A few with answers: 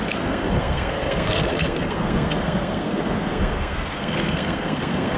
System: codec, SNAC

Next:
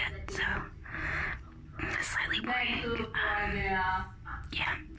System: none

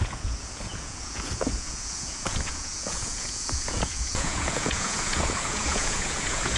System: vocoder, Vocos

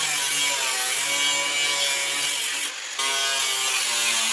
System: none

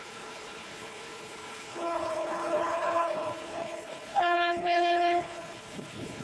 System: codec, HILCodec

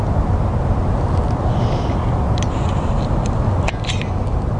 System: none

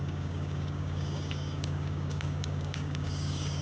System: codec, DAC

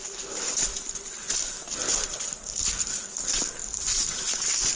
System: none